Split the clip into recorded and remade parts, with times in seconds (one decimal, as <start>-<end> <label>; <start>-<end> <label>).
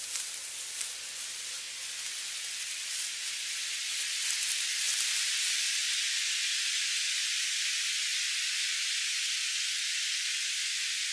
0.0-11.1 recorded